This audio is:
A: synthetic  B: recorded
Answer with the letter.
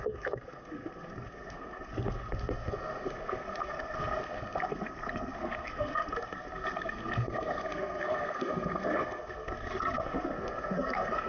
A